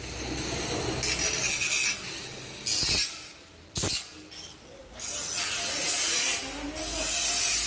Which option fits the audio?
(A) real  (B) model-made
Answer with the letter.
A